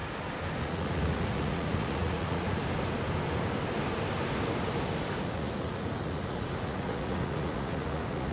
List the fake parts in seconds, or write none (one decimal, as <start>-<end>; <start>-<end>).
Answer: 0.6-2.6; 5.2-8.3